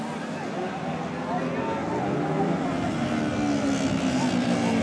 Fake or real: real